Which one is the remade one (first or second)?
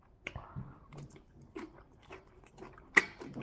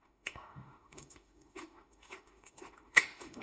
second